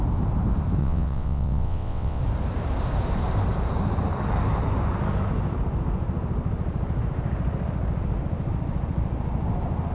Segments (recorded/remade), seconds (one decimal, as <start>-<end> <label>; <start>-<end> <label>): 0.0-0.8 recorded; 0.8-2.2 remade; 2.2-9.9 recorded